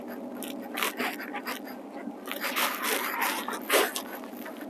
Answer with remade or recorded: recorded